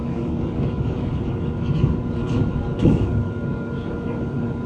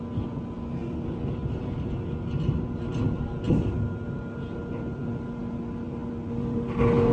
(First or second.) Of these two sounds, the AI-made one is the first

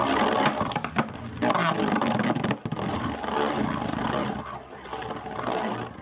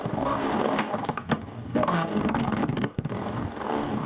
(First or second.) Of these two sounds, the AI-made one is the second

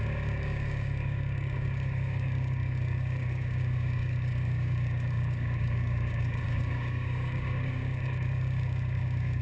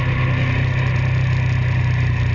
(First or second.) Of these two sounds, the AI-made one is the first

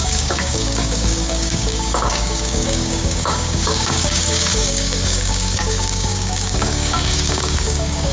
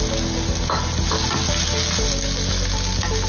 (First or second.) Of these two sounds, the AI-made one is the first